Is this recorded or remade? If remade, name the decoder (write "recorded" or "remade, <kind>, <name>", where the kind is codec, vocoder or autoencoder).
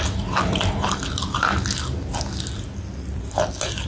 recorded